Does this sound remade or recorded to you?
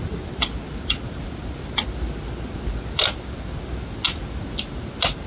recorded